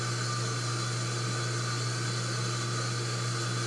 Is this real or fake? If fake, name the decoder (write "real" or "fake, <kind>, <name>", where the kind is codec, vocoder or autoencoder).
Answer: real